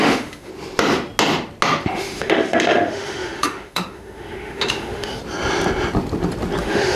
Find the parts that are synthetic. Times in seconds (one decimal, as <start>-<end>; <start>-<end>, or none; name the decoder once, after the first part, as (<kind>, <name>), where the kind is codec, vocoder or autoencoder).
0.0-0.5 (autoencoder, DAC-VAE); 1.9-5.2; 6.6-7.0